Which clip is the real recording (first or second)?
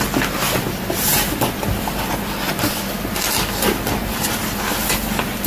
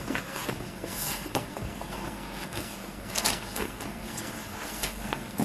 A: first